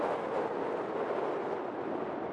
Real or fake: real